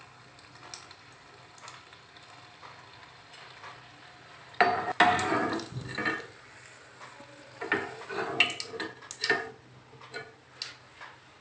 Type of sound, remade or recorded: recorded